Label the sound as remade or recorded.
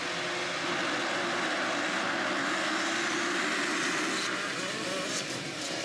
recorded